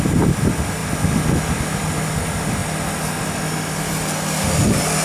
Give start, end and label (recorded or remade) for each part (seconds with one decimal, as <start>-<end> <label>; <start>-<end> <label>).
0.0-5.0 recorded